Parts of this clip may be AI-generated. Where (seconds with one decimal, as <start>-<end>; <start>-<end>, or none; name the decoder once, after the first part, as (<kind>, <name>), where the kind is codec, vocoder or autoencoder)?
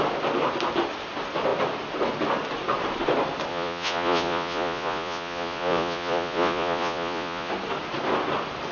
3.5-7.5 (vocoder, Vocos)